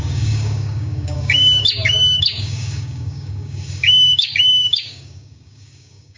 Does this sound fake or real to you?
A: fake